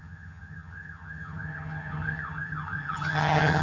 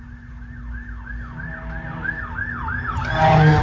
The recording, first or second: second